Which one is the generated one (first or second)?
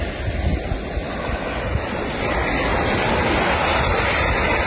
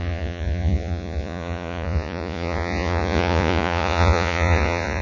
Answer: second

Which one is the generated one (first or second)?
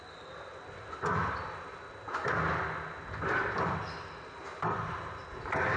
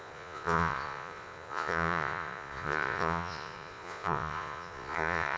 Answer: second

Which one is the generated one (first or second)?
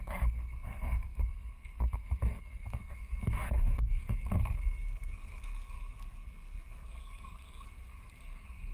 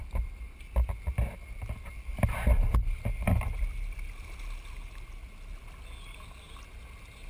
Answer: first